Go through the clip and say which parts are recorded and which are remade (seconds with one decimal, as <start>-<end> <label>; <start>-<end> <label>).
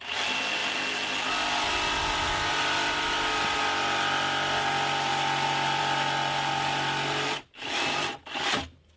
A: 0.0-9.0 recorded